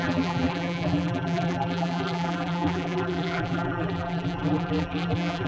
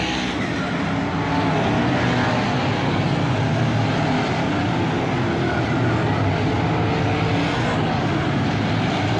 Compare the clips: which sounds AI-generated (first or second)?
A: first